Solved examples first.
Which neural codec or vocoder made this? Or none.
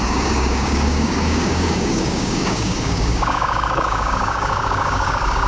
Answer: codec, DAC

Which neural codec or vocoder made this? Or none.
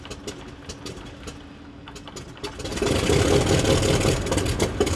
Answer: none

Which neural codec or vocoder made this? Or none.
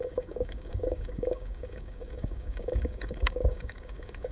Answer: codec, DAC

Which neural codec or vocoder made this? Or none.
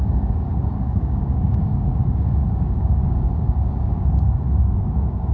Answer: codec, DAC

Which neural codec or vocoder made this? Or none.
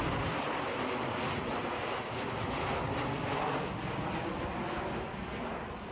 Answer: none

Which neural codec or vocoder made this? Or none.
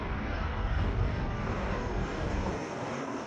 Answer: codec, DAC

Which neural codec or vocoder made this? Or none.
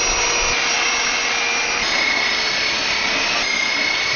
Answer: none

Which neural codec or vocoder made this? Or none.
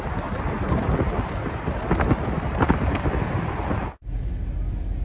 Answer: none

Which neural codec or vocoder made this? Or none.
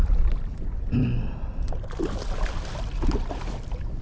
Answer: none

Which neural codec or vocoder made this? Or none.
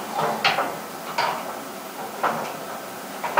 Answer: none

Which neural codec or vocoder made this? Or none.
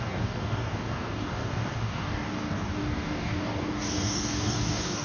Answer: codec, DAC